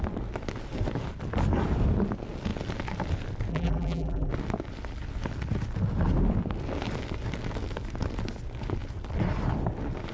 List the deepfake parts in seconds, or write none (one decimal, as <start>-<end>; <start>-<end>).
3.5-4.3